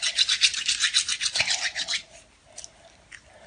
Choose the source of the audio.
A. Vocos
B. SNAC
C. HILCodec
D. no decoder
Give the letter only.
D